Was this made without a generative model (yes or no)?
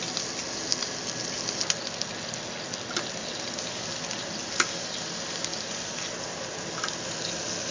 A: yes